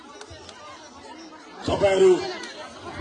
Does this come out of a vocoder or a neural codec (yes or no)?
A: no